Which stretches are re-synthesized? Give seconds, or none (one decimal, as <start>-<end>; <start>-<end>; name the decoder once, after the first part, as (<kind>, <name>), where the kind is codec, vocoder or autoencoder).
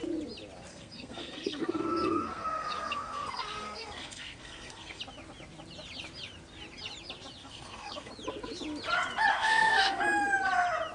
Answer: 0.7-5.0 (codec, SNAC); 7.4-8.1; 9.3-10.0